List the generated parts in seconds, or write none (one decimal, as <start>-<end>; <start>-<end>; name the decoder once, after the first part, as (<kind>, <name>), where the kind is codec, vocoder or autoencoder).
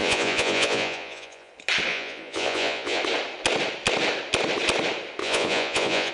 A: 0.0-1.5 (vocoder, Vocos); 1.9-3.0; 5.2-6.1